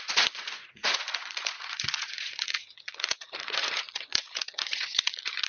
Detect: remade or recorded remade